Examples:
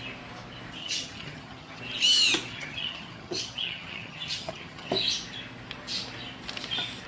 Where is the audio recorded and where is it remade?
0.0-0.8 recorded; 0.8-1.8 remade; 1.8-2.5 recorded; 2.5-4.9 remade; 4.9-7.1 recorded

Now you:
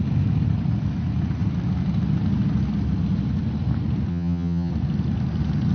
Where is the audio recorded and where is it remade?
0.0-4.1 recorded; 4.1-4.7 remade; 4.7-5.7 recorded

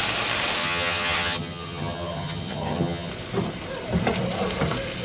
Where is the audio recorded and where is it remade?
0.0-0.6 recorded; 0.6-3.1 remade; 3.1-5.0 recorded

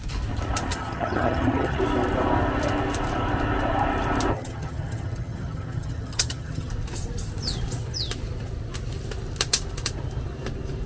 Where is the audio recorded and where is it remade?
0.0-0.7 recorded; 0.7-1.8 remade; 1.8-4.3 recorded; 4.3-6.7 remade; 6.7-10.9 recorded

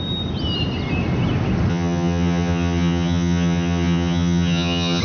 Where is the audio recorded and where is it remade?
0.0-1.7 recorded; 1.7-5.0 remade